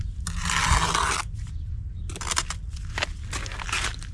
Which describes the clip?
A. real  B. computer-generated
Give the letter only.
A